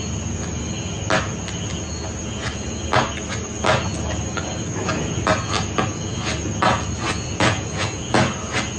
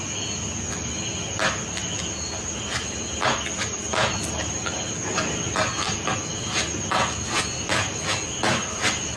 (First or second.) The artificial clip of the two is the second